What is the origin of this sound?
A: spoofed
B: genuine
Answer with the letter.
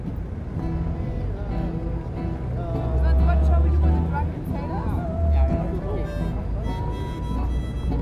B